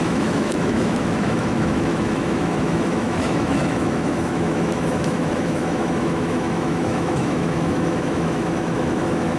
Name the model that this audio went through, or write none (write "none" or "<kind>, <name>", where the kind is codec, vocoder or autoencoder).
autoencoder, DAC-VAE